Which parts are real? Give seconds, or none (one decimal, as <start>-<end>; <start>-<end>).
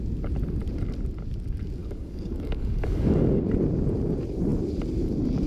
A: 0.0-1.8; 3.4-5.5